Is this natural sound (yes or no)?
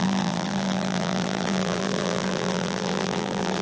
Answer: no